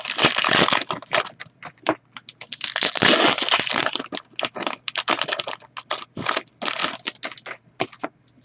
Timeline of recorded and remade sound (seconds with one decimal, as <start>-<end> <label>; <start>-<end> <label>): 0.0-8.4 recorded